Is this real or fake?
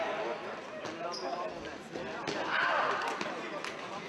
real